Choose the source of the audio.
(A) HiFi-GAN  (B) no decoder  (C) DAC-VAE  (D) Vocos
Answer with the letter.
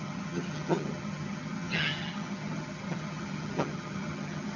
A